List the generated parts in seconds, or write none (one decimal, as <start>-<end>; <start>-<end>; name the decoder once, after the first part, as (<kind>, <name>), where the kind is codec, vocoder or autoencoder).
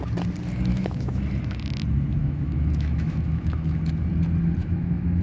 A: 0.7-1.2 (autoencoder, DAC-VAE); 2.2-3.8; 4.6-5.2